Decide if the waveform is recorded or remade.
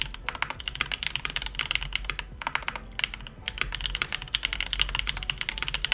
recorded